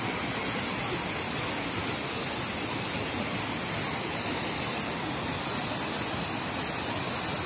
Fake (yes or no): no